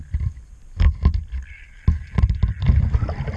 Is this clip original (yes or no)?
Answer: yes